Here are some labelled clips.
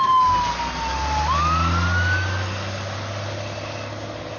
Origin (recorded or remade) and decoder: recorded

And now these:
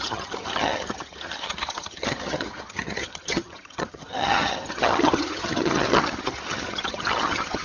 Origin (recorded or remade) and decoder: remade, vocoder, HiFi-GAN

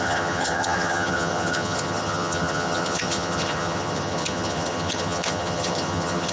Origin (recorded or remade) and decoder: remade, vocoder, HiFi-GAN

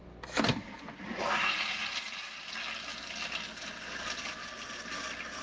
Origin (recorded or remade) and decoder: recorded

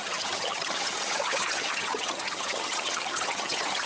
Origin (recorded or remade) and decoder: remade, vocoder, HiFi-GAN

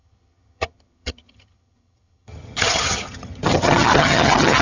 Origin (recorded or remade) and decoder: remade, vocoder, HiFi-GAN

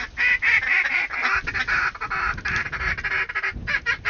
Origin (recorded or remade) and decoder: recorded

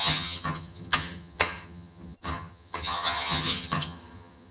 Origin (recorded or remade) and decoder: remade, vocoder, HiFi-GAN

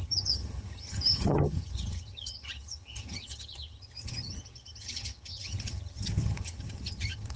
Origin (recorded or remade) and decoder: remade, vocoder, HiFi-GAN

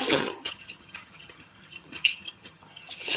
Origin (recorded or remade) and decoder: remade, vocoder, HiFi-GAN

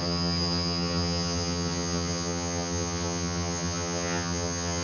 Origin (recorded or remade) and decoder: remade, vocoder, HiFi-GAN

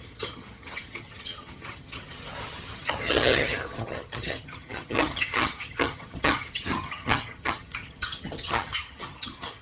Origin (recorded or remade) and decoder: remade, vocoder, HiFi-GAN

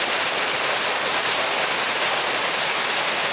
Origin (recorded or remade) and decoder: recorded